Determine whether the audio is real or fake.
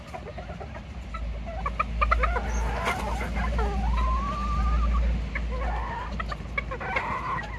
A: real